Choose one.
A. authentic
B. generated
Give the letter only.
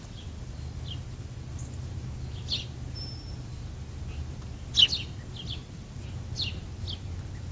A